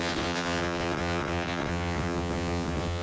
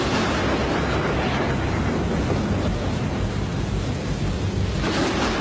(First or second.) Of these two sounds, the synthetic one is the first